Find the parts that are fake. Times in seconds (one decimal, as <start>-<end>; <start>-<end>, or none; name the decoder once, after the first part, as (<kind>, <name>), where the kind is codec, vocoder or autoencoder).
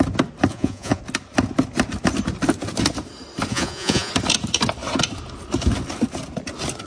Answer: 0.5-1.0 (vocoder, Vocos); 3.5-4.1